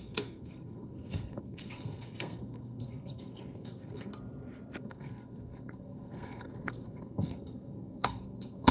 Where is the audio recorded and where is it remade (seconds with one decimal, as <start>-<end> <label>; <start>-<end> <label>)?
0.0-4.1 remade; 4.1-4.8 recorded; 4.8-8.7 remade